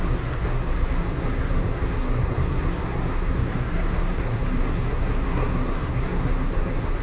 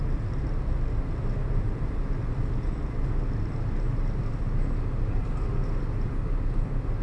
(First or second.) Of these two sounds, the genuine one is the second